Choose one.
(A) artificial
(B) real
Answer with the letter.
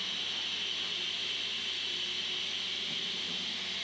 B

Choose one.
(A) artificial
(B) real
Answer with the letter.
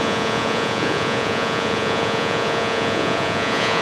A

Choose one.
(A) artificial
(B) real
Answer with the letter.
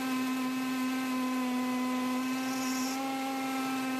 B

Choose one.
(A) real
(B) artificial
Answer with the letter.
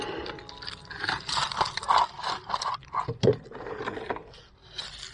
A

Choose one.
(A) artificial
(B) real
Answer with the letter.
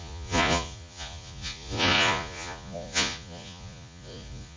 A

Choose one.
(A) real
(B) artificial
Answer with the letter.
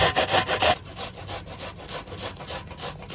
A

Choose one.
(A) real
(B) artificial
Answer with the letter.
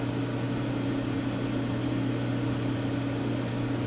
A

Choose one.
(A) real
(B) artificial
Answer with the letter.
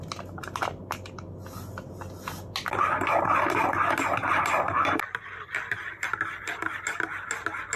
A